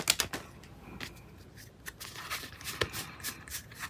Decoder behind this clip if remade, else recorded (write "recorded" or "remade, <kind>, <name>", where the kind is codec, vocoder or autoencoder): recorded